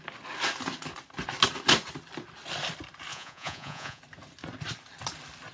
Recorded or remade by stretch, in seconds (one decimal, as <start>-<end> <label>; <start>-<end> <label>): 0.0-3.1 recorded; 3.1-4.0 remade; 4.0-5.5 recorded